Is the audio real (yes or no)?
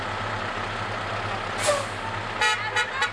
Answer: yes